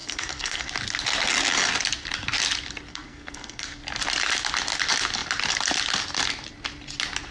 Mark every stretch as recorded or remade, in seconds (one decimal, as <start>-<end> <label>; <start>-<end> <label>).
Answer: 0.0-0.7 remade; 0.7-2.9 recorded; 2.9-3.8 remade; 3.8-7.3 recorded

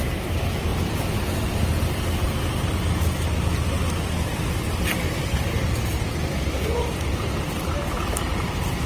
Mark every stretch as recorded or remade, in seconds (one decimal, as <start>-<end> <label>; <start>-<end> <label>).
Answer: 0.0-0.7 recorded; 0.7-1.2 remade; 1.2-6.8 recorded; 6.8-7.4 remade; 7.4-8.9 recorded

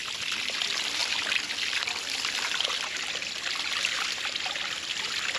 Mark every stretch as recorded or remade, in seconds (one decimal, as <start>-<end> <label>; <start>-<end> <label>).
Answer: 0.0-1.0 recorded; 1.0-4.2 remade; 4.2-5.4 recorded

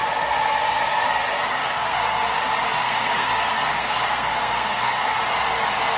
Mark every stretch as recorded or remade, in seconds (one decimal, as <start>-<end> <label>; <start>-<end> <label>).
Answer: 0.0-1.6 recorded; 1.6-2.2 remade; 2.2-2.8 recorded; 2.8-5.2 remade; 5.2-6.0 recorded